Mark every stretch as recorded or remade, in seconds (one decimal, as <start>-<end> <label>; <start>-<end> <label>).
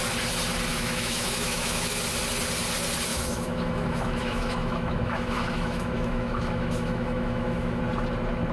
0.0-0.7 recorded; 0.7-2.0 remade; 2.0-3.1 recorded; 3.1-7.8 remade; 7.8-8.5 recorded